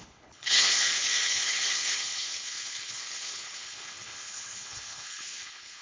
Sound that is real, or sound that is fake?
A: fake